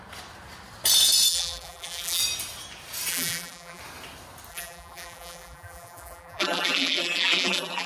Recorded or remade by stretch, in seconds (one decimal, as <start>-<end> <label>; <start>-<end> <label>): 0.0-1.3 recorded; 1.3-2.2 remade; 2.2-3.1 recorded; 3.1-3.8 remade; 3.8-4.5 recorded; 4.5-7.9 remade